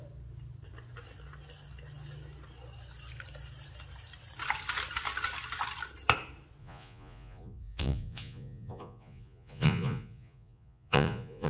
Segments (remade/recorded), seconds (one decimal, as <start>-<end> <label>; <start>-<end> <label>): 0.0-6.6 recorded; 6.6-11.5 remade